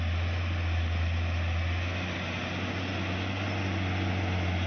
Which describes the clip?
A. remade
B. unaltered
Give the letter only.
B